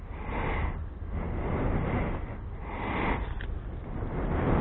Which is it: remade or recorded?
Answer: recorded